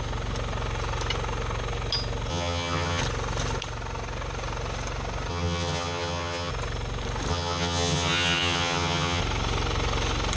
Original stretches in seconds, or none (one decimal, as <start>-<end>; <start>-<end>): 0.0-2.3; 3.0-5.3; 6.5-7.3; 9.2-10.4